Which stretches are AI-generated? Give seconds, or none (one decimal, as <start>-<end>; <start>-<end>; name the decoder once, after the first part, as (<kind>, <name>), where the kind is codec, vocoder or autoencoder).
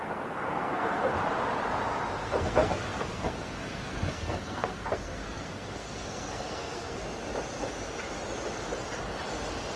0.0-1.1 (codec, SNAC); 2.2-7.0